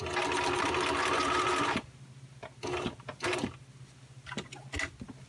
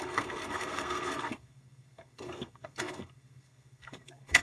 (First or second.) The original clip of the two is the first